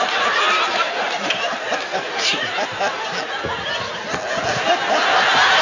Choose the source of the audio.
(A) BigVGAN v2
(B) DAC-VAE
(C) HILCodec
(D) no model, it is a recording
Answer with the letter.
D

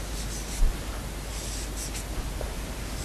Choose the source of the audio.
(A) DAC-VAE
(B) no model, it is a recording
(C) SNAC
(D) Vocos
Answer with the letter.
B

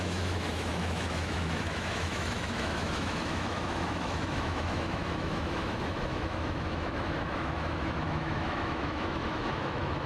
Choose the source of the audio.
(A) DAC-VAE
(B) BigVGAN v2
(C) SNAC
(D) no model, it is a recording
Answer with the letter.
A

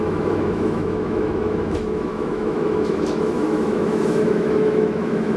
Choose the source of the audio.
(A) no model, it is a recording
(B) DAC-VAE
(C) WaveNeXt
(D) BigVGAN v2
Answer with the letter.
B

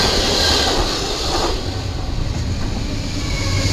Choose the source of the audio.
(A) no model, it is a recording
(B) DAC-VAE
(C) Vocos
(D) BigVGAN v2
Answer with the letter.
A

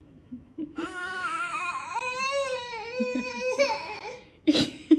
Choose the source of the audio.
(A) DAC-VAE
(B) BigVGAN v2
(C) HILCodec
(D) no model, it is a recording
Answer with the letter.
A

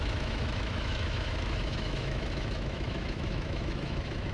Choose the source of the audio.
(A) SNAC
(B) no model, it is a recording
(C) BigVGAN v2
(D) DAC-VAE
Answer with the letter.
D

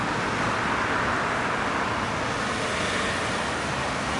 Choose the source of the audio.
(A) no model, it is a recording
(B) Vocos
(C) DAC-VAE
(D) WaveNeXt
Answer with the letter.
A